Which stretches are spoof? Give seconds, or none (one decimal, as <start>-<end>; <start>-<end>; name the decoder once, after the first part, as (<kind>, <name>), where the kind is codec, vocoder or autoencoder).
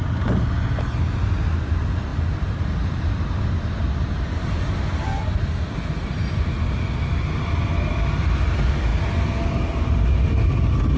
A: none